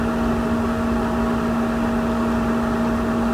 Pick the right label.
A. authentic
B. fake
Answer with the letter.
A